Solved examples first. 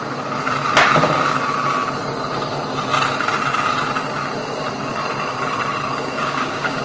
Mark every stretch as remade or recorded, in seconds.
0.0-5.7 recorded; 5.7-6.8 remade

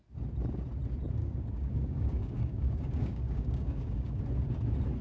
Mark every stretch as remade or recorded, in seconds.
0.0-1.2 recorded; 1.2-4.2 remade; 4.2-5.0 recorded

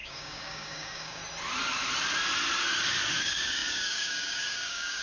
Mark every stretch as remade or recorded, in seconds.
0.0-1.2 remade; 1.2-3.2 recorded; 3.2-5.0 remade

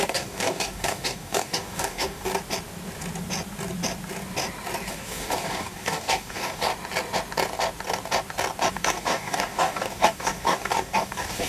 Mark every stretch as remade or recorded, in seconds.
0.0-2.3 remade; 2.3-4.9 recorded; 4.9-6.7 remade; 6.7-8.7 recorded; 8.7-11.5 remade